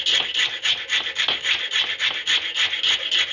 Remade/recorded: recorded